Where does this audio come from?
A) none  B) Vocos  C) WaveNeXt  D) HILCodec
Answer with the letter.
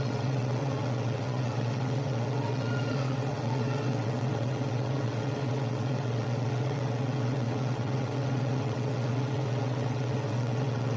C